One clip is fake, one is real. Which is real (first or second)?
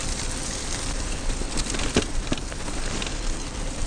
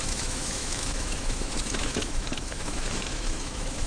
first